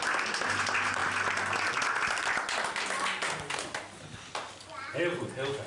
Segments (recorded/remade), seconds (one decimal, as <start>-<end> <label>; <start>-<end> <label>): 0.0-5.7 recorded